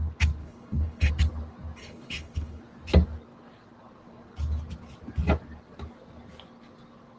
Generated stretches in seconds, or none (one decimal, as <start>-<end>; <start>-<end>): 0.4-1.1; 1.8-2.6